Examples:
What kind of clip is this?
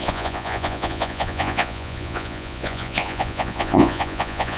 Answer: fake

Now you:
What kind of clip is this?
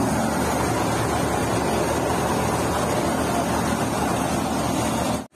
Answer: real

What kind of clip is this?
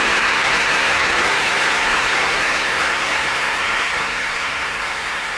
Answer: fake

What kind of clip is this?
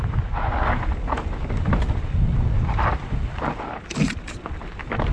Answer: real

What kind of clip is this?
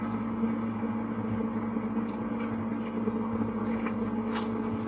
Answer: real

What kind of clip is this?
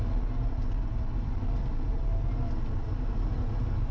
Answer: real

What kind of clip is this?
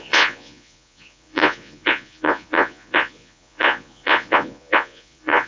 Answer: fake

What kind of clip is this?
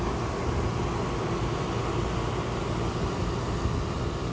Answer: real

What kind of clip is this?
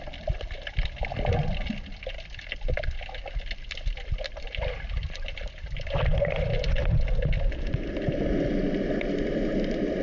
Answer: real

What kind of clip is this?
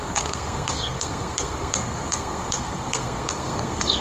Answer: fake